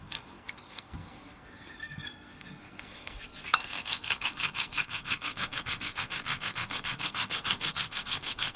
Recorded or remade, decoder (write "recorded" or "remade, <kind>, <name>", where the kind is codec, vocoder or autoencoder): remade, codec, SNAC